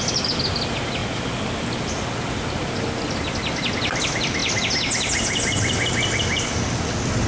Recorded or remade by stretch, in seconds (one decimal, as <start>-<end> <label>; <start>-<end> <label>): 0.0-7.3 recorded